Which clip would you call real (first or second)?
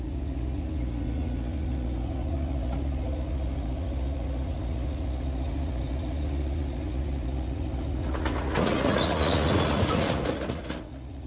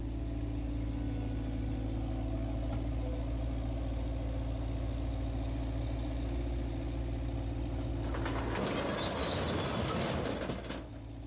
second